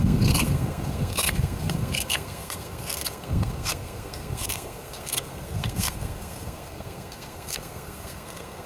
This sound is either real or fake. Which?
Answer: fake